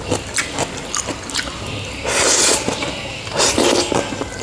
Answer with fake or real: real